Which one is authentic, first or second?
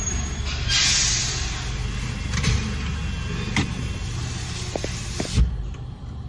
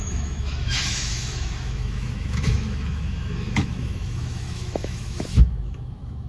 first